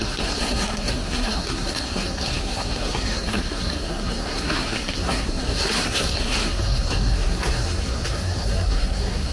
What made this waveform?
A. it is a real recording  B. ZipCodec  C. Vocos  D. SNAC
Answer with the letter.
D